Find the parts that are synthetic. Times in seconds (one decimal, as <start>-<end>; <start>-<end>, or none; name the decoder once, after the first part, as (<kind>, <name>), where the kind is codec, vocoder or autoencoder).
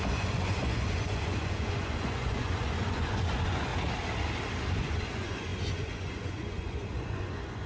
0.0-3.7 (vocoder, Vocos); 4.7-7.7